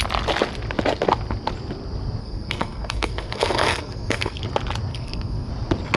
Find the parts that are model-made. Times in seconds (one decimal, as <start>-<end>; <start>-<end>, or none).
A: 2.2-4.4; 4.9-5.5